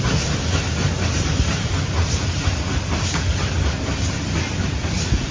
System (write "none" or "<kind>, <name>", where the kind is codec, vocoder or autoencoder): none